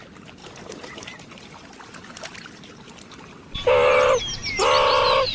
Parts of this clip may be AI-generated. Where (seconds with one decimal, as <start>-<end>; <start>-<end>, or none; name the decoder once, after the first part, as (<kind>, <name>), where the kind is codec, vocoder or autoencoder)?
none